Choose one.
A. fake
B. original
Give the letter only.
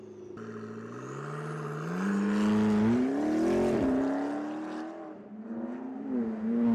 B